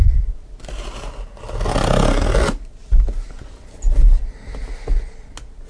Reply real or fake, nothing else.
real